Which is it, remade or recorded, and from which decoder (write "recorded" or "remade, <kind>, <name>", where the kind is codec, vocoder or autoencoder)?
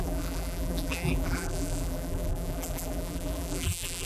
remade, vocoder, BigVGAN v2